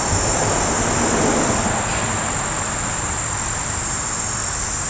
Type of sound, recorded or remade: recorded